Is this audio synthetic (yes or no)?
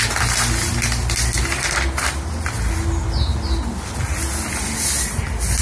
no